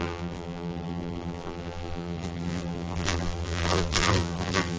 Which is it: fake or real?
fake